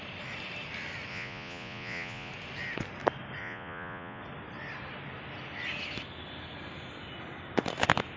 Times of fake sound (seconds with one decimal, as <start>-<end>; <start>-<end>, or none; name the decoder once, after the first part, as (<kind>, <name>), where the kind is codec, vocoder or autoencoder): 1.1-2.3 (vocoder, Vocos); 3.4-4.2